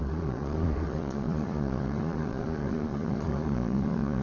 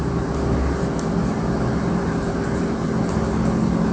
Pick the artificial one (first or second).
first